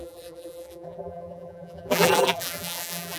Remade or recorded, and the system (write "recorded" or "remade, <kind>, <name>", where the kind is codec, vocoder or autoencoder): remade, vocoder, BigVGAN v2